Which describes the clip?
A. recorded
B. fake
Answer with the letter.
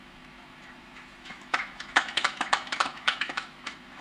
B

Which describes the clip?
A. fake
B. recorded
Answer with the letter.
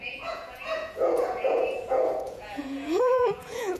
A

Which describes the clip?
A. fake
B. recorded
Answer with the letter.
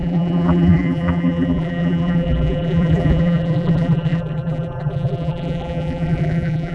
A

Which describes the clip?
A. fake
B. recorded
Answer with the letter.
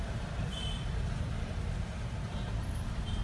B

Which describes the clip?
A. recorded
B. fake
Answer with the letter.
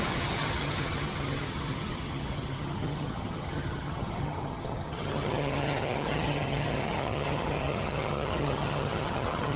B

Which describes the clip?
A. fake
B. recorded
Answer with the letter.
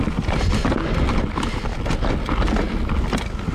B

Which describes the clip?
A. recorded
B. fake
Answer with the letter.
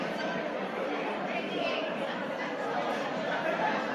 B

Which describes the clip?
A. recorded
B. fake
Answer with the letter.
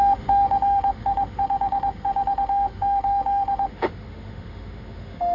B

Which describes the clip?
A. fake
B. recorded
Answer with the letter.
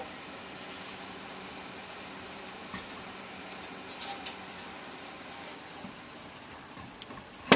B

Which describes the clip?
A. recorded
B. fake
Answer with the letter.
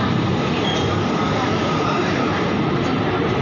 A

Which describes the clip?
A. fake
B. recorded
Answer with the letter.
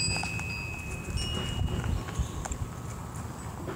B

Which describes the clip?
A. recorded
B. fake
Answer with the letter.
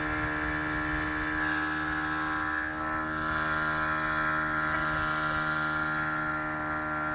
A